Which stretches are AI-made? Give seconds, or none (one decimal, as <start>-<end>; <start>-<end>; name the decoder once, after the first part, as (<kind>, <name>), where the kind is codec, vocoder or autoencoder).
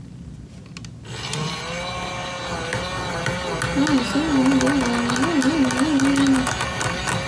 none